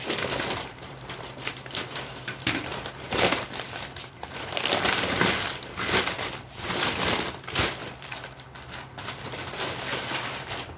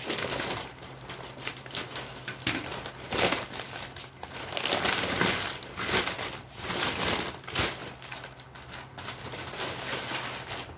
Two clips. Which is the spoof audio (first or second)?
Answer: first